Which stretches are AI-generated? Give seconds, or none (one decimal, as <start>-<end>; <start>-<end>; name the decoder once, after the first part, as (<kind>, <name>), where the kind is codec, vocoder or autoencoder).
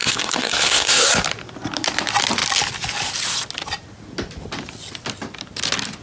0.0-1.1 (codec, SNAC)